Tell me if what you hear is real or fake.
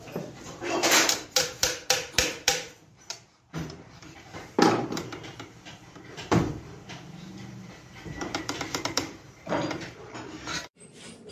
fake